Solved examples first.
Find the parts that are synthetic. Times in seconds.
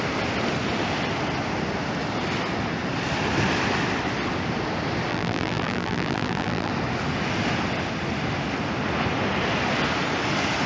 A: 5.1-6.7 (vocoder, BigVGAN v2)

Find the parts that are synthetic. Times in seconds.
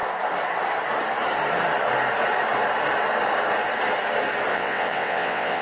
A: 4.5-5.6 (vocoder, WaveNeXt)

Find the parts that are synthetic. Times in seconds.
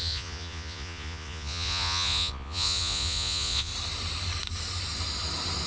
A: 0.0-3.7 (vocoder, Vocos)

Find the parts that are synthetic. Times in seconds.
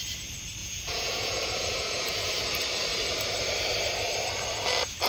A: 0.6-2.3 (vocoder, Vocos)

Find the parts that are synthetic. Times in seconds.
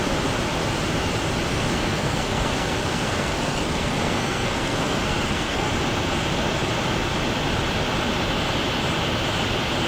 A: 1.5-5.7 (codec, SNAC)